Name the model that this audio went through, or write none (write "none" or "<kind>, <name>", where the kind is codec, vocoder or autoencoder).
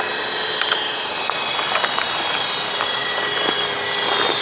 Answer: none